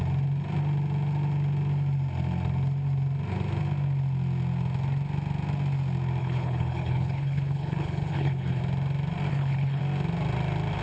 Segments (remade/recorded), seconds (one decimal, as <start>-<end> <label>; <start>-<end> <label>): 0.0-6.2 recorded; 6.2-8.6 remade; 8.6-9.3 recorded; 9.3-9.8 remade; 9.8-10.8 recorded